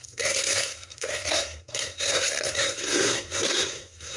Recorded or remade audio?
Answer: remade